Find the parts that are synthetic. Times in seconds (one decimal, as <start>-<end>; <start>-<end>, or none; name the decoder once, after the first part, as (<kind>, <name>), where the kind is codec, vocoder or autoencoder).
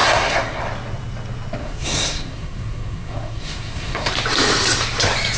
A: 0.0-0.6 (codec, SNAC); 1.6-4.1